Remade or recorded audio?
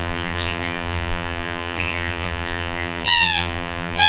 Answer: remade